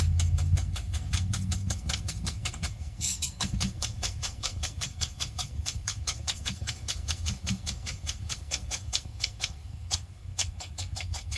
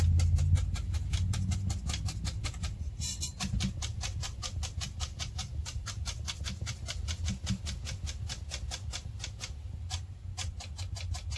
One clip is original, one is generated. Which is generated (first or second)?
first